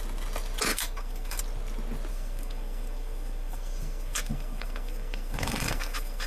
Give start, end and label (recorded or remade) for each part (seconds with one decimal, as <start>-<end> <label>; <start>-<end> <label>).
0.0-0.7 recorded; 0.7-1.4 remade; 1.4-2.1 recorded; 2.1-6.3 remade